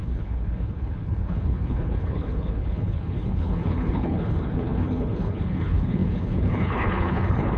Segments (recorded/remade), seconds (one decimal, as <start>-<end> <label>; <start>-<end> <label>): 0.0-7.6 remade